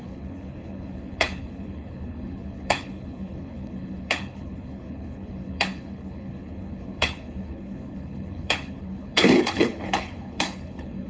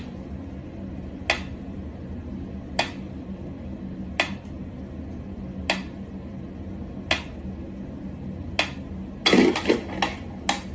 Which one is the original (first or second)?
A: second